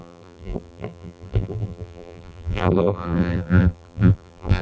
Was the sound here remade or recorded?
remade